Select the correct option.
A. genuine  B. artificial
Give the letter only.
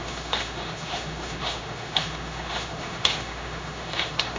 B